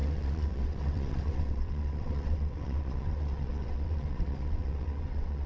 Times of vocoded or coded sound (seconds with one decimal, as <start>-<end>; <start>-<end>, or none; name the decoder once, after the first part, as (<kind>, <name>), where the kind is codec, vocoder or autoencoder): 0.0-5.5 (vocoder, WaveNeXt)